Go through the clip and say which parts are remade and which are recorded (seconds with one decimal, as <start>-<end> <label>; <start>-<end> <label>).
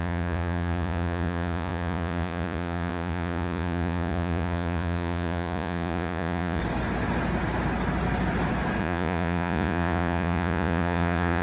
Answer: 0.0-6.6 remade; 6.6-8.8 recorded; 8.8-11.4 remade